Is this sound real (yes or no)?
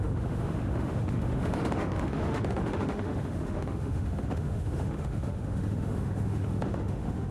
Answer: no